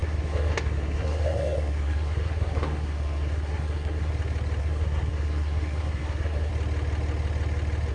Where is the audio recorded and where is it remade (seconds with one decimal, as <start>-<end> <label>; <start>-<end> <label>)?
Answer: 0.0-4.1 remade; 4.1-4.6 recorded; 4.6-6.5 remade; 6.5-7.9 recorded